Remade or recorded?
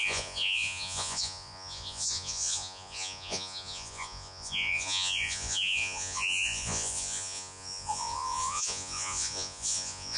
remade